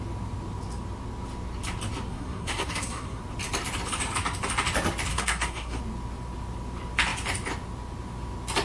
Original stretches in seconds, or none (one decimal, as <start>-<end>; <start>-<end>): 0.0-2.1; 3.2-5.1; 5.8-8.6